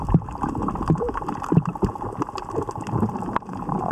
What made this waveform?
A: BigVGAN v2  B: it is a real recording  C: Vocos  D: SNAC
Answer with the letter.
B